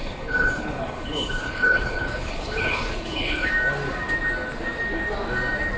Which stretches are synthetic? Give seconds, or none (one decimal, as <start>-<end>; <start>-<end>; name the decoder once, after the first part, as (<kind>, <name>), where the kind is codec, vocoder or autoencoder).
0.0-3.5 (codec, HILCodec)